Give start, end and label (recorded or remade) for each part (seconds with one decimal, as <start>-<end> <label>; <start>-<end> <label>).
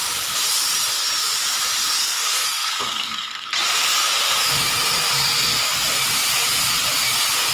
0.0-2.0 recorded; 2.0-3.5 remade; 3.5-7.5 recorded